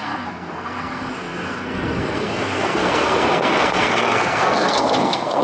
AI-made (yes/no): yes